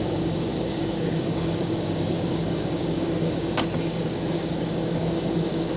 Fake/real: fake